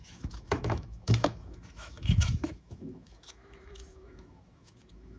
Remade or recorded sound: remade